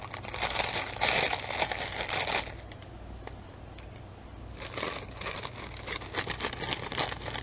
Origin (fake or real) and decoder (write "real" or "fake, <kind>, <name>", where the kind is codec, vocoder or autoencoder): real